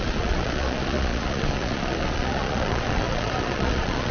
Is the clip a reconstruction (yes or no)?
yes